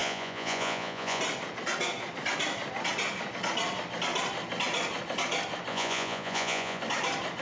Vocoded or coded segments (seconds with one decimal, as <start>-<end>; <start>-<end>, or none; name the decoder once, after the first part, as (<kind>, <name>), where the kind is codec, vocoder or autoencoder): 0.0-1.2 (vocoder, Vocos); 5.7-6.8